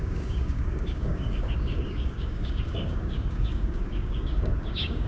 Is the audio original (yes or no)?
no